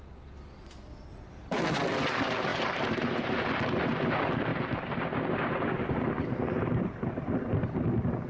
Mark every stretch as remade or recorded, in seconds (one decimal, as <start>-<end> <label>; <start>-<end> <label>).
0.0-1.1 recorded; 1.1-1.6 remade; 1.6-2.5 recorded; 2.5-3.3 remade; 3.3-4.5 recorded; 4.5-7.4 remade; 7.4-8.3 recorded